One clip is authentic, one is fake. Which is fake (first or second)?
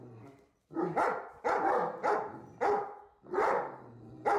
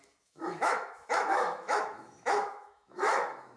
second